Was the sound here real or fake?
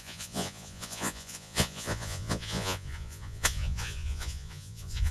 fake